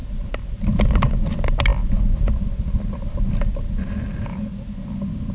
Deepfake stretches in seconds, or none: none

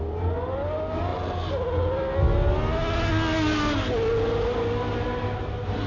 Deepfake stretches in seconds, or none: none